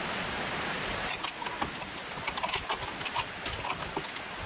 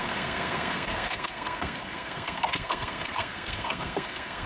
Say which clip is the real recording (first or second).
first